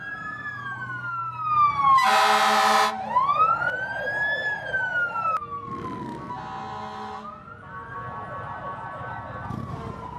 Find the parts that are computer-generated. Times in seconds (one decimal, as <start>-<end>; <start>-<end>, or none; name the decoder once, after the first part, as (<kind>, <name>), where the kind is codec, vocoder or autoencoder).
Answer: none